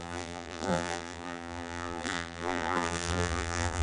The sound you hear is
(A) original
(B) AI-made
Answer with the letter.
B